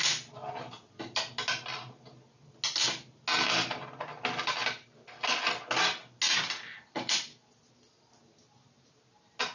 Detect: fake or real real